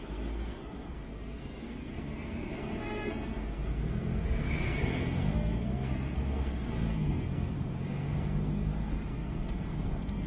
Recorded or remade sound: remade